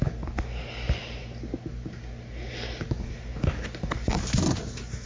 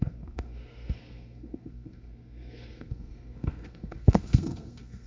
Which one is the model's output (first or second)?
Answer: second